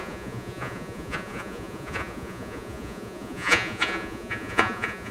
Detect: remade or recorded remade